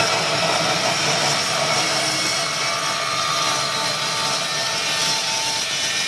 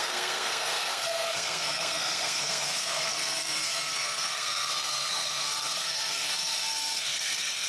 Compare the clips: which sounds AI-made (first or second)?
second